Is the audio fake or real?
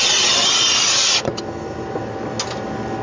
real